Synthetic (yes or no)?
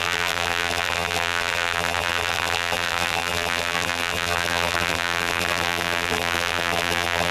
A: yes